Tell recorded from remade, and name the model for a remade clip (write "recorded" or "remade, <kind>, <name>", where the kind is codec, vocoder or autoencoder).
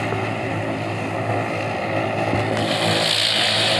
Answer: recorded